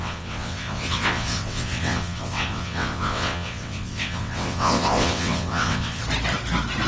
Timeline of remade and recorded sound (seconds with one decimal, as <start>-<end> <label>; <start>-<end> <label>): 0.0-6.0 remade; 6.0-6.9 recorded